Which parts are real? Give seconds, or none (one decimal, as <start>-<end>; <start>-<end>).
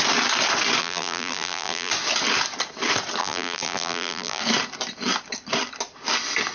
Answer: 0.0-0.8; 1.9-3.2; 4.4-6.5